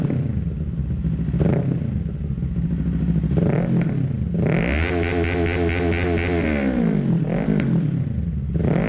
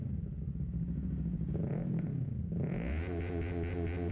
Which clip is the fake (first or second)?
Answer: second